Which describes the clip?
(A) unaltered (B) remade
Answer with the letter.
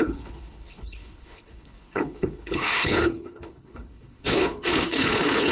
B